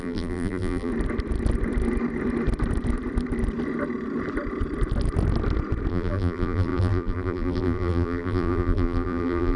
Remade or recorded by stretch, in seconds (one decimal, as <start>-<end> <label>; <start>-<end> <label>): 0.0-0.9 remade; 0.9-5.9 recorded; 5.9-9.6 remade

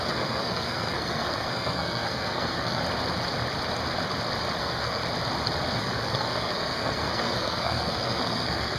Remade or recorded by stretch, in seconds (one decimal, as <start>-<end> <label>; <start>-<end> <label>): 0.0-2.8 remade; 2.8-4.6 recorded; 4.6-5.0 remade; 5.0-5.8 recorded; 5.8-8.8 remade

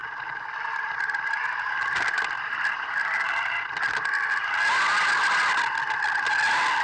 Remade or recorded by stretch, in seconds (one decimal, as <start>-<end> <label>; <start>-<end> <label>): 0.0-6.8 recorded

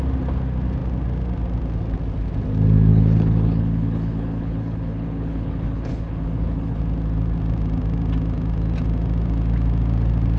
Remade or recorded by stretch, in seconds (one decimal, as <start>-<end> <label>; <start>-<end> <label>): 0.0-2.9 recorded; 2.9-6.8 remade; 6.8-10.4 recorded

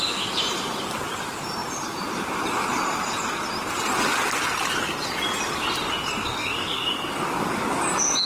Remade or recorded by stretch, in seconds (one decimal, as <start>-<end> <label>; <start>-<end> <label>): 0.0-6.4 recorded; 6.4-7.8 remade; 7.8-8.3 recorded